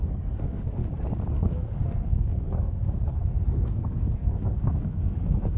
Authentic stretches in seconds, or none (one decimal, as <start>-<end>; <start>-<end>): 0.8-1.3